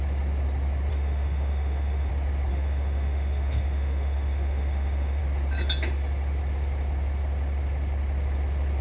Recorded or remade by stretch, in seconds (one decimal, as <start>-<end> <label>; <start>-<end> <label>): 0.0-0.9 recorded; 0.9-2.1 remade; 2.1-2.5 recorded; 2.5-5.2 remade; 5.2-8.8 recorded